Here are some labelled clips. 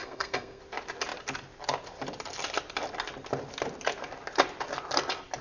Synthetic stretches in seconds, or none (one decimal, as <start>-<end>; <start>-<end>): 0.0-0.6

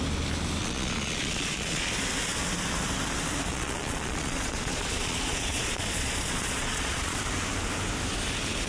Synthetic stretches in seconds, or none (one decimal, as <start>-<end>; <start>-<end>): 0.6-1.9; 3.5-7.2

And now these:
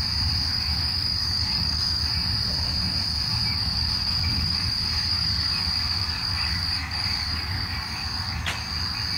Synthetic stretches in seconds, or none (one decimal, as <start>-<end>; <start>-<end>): 0.5-2.0; 3.5-8.4

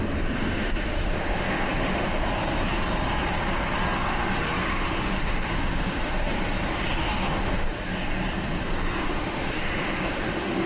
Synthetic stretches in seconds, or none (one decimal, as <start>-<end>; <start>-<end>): 0.4-2.1; 4.7-6.3; 7.0-8.0; 9.0-10.7